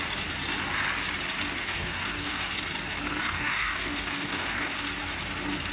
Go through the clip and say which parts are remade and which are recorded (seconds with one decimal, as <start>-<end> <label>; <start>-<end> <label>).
0.0-1.6 recorded; 1.6-2.5 remade; 2.5-3.2 recorded; 3.2-4.9 remade; 4.9-5.7 recorded